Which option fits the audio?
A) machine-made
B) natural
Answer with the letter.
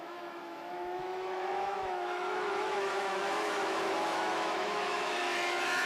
A